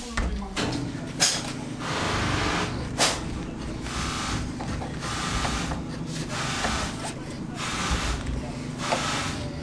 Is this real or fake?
real